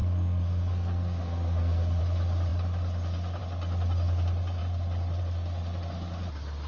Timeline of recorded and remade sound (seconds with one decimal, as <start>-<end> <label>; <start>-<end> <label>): 0.0-2.0 remade; 2.0-6.7 recorded

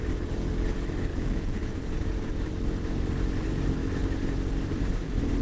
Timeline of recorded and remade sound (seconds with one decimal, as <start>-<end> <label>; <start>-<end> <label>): 0.0-1.1 recorded; 1.1-2.1 remade; 2.1-5.4 recorded